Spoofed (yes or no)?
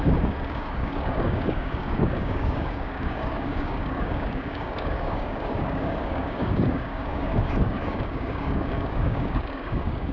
yes